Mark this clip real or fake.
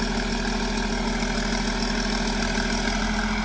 real